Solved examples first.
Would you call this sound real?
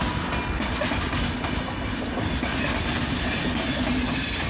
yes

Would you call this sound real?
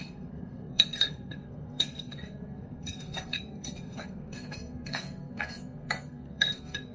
no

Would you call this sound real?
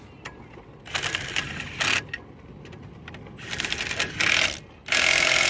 yes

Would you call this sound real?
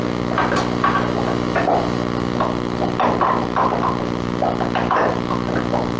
yes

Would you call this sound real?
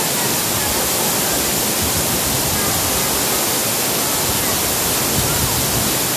yes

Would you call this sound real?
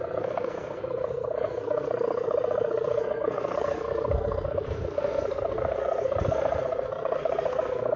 no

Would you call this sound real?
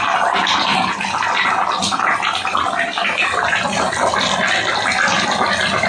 yes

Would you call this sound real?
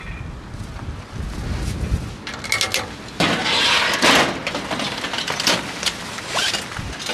yes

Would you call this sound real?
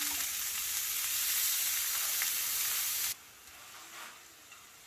yes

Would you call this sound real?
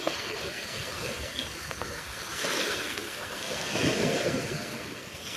no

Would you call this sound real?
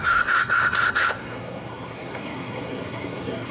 no